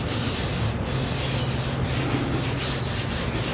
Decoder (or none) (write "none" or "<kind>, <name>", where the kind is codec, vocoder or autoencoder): none